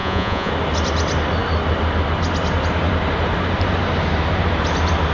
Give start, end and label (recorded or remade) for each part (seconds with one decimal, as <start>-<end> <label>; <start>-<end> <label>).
0.0-0.5 remade; 0.5-5.1 recorded